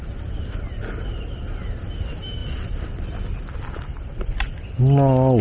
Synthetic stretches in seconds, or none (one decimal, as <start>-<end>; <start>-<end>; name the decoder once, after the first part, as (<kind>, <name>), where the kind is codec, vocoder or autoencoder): none